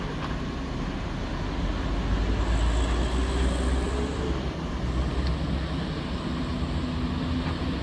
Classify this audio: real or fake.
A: real